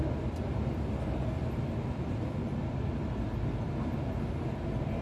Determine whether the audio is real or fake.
real